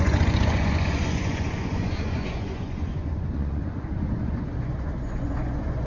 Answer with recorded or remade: remade